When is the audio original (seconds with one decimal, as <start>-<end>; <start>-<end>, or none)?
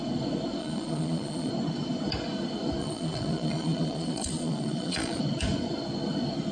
0.0-0.6; 1.5-2.8; 5.2-6.5